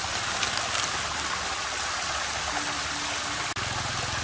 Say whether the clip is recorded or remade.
recorded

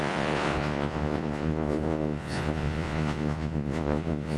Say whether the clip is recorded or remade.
remade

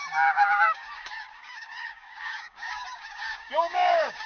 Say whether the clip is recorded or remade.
remade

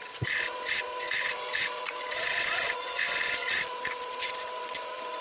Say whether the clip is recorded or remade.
remade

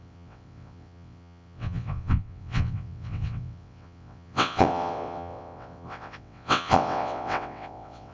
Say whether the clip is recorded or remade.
remade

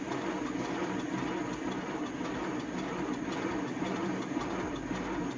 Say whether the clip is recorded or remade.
recorded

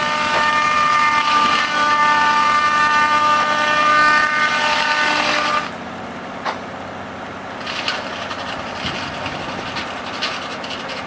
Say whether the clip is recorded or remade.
recorded